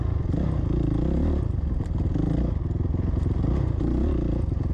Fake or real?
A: real